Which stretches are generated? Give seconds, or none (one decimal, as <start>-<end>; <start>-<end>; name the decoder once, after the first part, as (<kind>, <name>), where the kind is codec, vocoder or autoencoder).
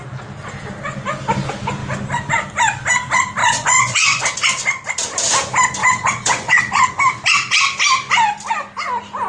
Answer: 3.4-4.2 (vocoder, Vocos); 5.8-7.0